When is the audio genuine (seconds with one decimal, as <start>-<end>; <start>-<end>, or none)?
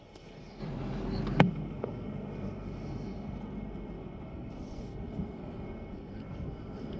0.6-1.4